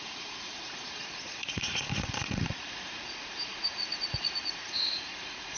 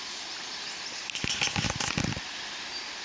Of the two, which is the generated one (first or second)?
first